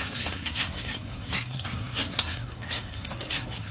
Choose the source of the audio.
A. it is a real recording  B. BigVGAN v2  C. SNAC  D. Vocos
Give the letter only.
C